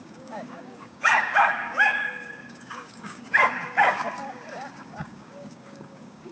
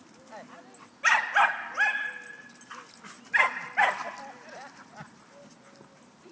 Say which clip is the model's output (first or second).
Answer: first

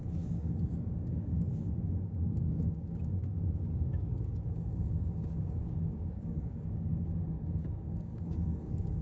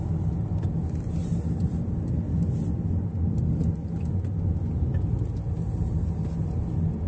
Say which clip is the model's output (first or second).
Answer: first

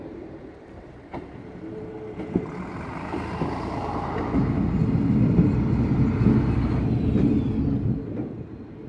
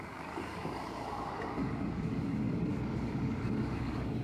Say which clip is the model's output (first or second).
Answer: second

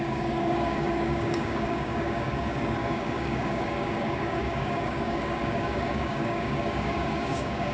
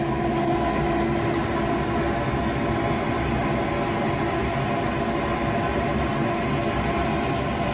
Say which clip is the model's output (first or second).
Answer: first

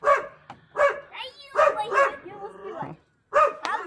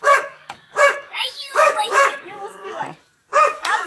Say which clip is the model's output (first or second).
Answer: second